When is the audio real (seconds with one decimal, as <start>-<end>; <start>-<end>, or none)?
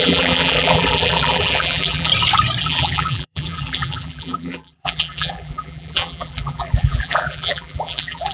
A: 2.1-2.6